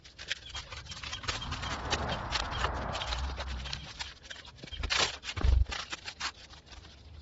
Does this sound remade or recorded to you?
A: recorded